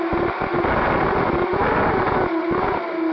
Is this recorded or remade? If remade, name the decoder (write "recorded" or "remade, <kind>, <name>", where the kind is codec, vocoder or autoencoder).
recorded